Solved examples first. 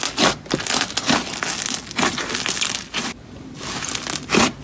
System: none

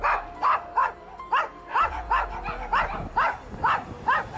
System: none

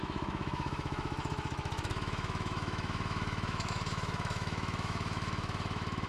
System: autoencoder, DAC-VAE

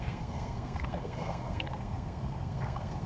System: codec, SNAC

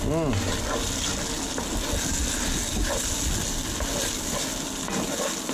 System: none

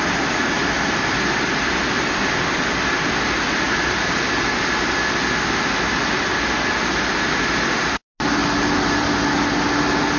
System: none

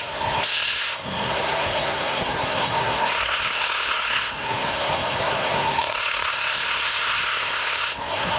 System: codec, SNAC